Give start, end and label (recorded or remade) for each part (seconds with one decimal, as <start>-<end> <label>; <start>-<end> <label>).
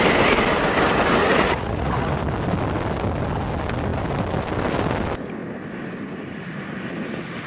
0.0-1.2 recorded; 1.2-2.1 remade; 2.1-7.5 recorded